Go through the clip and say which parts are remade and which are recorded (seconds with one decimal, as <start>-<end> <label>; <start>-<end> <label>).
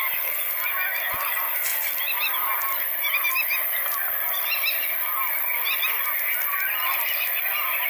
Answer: 0.0-7.9 recorded